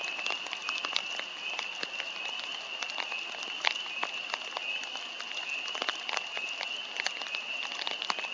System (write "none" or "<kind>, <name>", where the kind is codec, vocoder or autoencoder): none